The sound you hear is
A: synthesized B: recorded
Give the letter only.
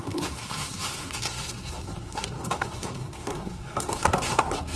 A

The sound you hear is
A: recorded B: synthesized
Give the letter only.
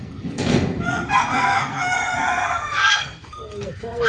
B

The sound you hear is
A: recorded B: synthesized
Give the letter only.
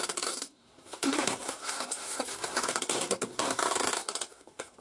B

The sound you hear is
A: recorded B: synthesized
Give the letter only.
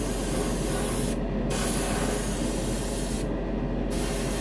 A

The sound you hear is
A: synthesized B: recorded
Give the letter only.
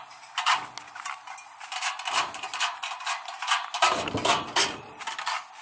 B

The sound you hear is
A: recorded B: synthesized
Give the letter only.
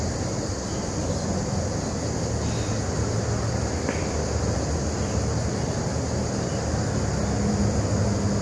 A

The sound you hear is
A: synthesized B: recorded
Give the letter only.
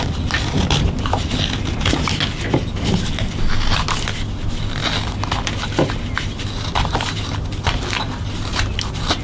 B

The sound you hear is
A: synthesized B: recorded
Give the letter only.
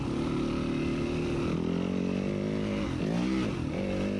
B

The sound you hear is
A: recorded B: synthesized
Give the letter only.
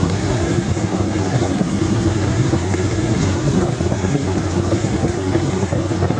B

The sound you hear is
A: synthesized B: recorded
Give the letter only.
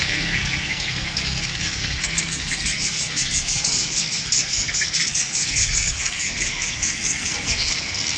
A